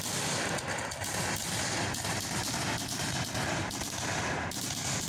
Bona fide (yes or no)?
yes